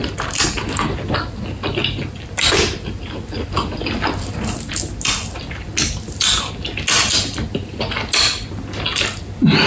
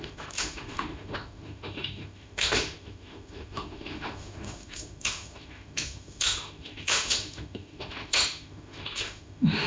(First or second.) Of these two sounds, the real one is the first